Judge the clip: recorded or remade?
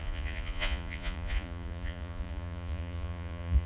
remade